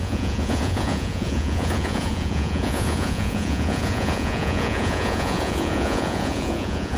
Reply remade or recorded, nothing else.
remade